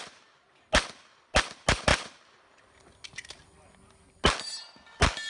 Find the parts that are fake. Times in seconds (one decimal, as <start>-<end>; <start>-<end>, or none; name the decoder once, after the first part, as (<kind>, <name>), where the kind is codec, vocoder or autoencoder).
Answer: none